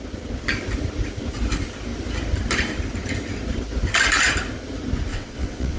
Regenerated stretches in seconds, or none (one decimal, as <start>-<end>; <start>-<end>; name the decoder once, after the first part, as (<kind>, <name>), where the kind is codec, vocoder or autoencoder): 5.1-5.8 (vocoder, WaveNeXt)